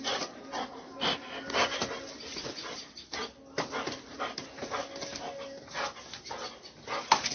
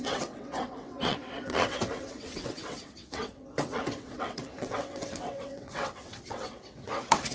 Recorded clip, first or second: first